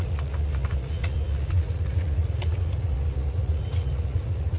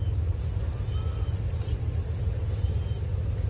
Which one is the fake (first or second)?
first